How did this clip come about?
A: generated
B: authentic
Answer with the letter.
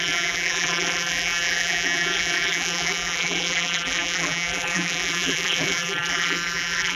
A